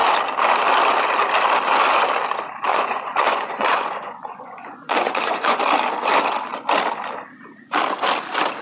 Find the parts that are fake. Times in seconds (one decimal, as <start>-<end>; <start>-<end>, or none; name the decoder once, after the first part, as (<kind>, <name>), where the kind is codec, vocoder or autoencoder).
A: 2.7-5.6 (vocoder, Vocos)